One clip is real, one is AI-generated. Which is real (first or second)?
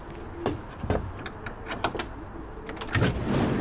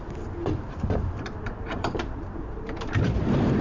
first